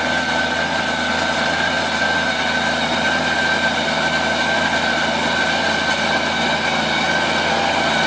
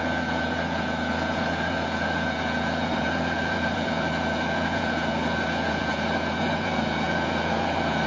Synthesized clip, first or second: second